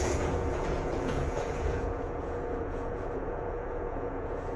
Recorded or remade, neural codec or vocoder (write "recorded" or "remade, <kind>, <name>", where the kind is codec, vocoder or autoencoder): remade, vocoder, Vocos